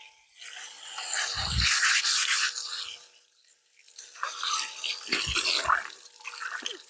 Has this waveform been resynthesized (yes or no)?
no